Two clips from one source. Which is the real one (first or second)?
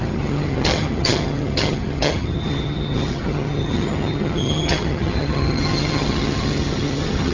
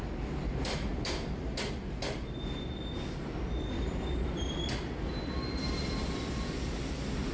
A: second